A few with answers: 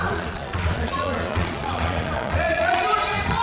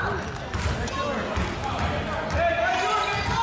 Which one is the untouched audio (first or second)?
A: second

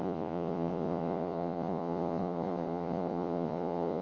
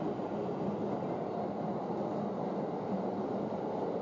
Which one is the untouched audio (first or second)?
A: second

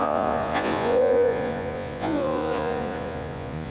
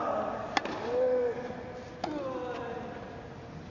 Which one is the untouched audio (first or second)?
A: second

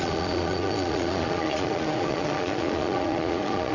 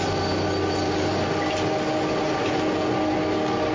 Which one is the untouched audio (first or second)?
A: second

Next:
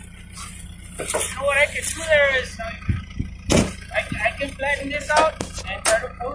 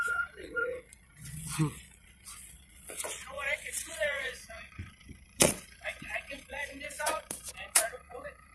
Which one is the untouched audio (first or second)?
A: first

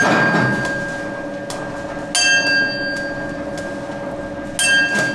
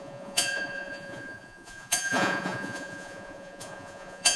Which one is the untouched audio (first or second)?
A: first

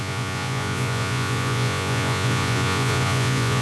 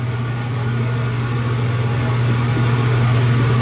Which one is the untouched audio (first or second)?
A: second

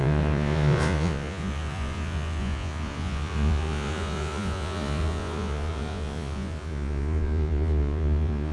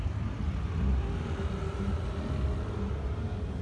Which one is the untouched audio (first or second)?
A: second